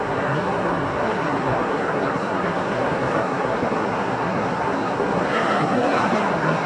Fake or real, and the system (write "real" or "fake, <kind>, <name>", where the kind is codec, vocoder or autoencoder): fake, codec, SNAC